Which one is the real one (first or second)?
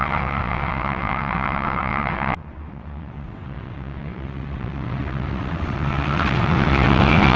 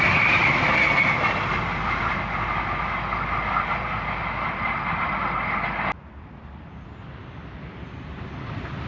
second